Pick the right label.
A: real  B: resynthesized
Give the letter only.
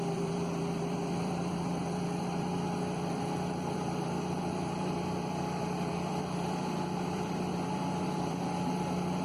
B